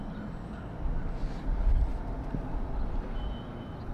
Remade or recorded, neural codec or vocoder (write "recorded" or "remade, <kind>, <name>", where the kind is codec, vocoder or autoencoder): recorded